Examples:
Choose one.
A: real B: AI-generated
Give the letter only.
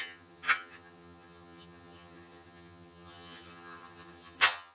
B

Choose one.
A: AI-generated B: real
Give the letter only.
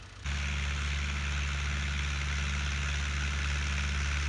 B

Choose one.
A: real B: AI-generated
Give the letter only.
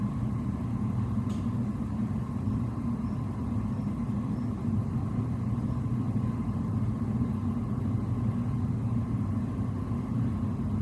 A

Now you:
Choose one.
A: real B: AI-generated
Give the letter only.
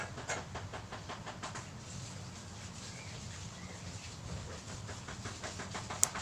A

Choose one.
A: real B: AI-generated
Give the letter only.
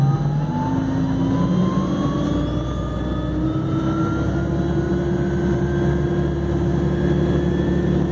A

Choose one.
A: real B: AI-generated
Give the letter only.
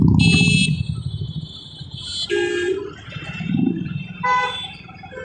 A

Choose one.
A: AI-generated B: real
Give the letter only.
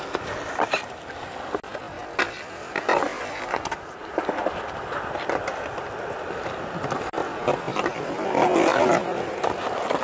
B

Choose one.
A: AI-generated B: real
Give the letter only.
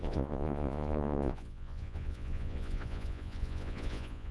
A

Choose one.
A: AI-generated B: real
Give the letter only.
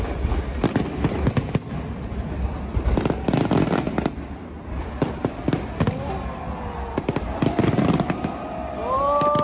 B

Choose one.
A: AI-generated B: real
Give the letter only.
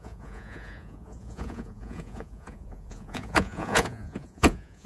A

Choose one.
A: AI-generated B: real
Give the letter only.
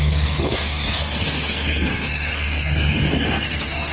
A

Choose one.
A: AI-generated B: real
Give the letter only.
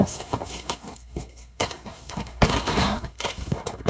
A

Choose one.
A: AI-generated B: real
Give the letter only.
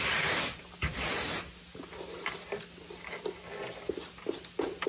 B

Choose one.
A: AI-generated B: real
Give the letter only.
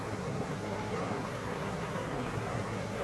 A